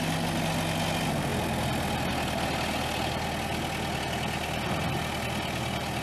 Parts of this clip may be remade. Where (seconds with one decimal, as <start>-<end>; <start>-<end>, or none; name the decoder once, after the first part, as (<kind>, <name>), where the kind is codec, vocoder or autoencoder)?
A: none